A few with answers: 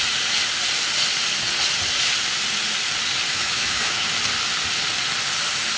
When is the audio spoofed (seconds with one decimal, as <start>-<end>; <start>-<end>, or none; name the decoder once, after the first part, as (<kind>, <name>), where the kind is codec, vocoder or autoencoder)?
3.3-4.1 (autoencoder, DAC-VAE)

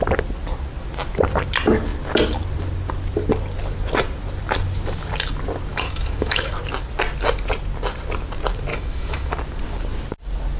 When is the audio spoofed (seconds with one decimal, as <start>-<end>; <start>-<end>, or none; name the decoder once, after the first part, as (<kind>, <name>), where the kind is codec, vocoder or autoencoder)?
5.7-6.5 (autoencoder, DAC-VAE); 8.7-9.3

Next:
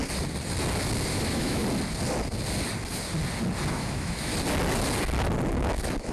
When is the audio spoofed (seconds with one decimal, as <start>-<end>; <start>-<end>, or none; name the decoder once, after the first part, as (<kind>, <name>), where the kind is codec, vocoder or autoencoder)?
1.1-1.6 (autoencoder, DAC-VAE); 3.7-4.3; 5.5-6.1

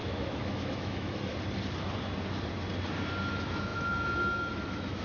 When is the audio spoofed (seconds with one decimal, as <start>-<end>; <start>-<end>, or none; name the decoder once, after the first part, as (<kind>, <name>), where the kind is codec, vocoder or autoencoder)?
0.0-1.3 (autoencoder, DAC-VAE); 3.3-5.0

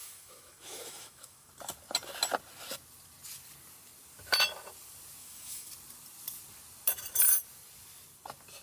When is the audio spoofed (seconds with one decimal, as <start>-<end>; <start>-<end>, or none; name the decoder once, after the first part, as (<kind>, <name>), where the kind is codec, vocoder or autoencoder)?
0.0-1.5 (autoencoder, DAC-VAE); 5.2-5.7

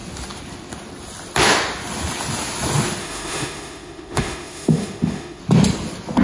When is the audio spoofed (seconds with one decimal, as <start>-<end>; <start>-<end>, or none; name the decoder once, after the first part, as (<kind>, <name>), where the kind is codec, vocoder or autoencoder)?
3.0-5.4 (autoencoder, DAC-VAE)